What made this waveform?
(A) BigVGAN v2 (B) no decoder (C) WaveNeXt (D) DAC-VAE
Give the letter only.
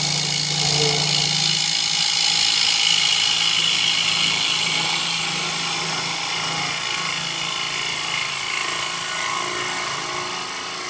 B